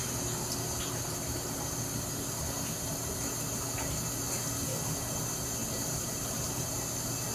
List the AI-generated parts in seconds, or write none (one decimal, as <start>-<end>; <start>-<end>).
5.6-6.7